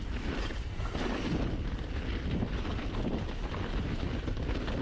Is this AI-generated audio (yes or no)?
no